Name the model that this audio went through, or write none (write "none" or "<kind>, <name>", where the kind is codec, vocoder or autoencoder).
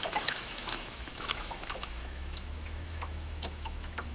autoencoder, DAC-VAE